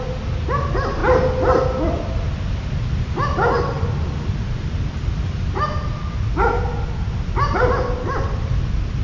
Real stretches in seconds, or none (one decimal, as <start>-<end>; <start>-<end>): 0.0-9.0